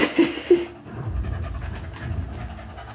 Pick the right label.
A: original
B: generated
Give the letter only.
A